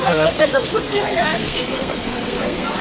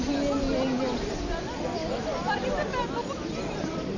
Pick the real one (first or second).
second